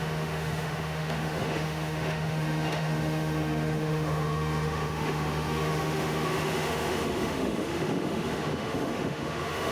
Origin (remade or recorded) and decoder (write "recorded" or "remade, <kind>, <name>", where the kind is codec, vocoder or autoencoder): remade, autoencoder, DAC-VAE